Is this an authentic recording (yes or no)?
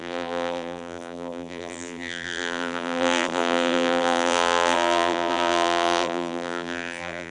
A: no